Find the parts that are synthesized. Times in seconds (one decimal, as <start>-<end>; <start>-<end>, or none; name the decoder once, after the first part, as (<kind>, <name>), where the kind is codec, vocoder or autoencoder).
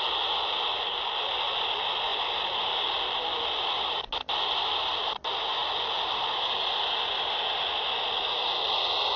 2.1-3.0 (vocoder, BigVGAN v2)